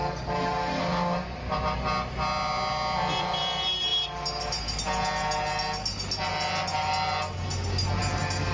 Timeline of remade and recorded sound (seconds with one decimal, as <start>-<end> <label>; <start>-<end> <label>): 0.0-8.5 recorded